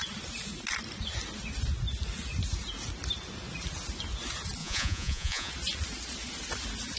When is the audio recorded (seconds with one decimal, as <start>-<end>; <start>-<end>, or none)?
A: 0.0-4.6; 5.5-7.0